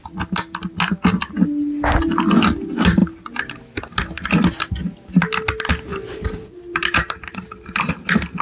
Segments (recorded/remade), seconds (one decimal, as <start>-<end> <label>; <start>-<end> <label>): 0.0-5.9 recorded; 5.9-7.9 remade; 7.9-8.4 recorded